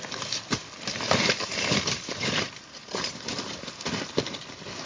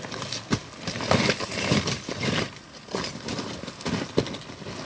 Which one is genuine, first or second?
second